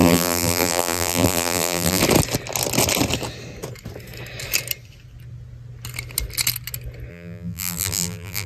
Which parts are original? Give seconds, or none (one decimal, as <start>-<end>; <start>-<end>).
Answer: 2.0-7.1